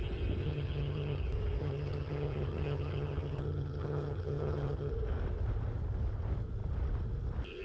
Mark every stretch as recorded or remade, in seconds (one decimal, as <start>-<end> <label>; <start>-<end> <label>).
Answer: 0.0-0.4 recorded; 0.4-1.2 remade; 1.2-1.6 recorded; 1.6-4.9 remade; 4.9-7.6 recorded